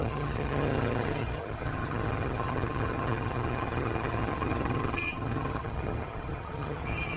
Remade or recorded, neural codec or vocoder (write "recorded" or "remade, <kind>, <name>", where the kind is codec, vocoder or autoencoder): remade, vocoder, HiFi-GAN